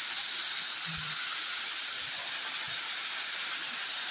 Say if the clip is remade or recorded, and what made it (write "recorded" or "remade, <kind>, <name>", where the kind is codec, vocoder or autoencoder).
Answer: recorded